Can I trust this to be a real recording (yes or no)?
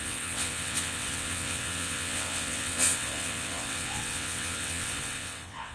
no